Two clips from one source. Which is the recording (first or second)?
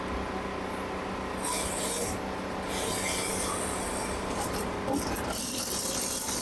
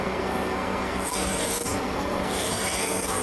first